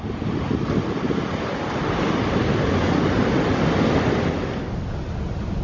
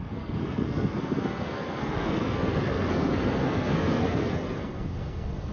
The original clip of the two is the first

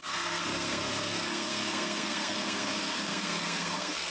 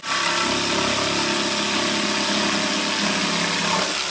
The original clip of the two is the second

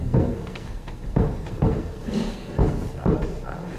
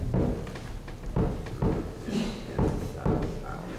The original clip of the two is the second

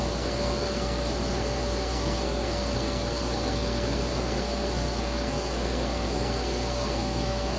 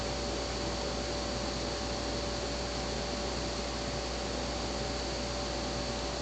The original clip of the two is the second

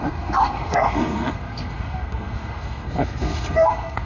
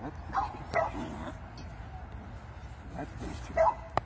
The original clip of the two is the second